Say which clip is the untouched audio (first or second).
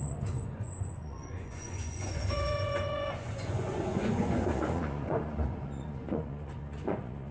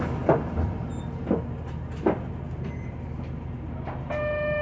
second